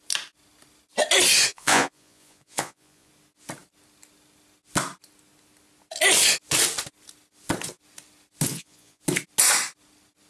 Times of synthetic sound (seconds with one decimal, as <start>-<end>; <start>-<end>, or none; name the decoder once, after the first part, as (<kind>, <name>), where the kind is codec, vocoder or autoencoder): 1.5-3.1 (vocoder, Vocos); 8.5-9.0